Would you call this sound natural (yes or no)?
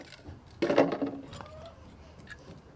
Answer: yes